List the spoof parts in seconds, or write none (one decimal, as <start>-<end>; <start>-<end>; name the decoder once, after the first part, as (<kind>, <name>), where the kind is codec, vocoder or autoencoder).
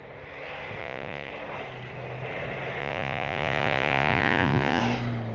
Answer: 0.8-1.3 (vocoder, Vocos); 2.8-4.8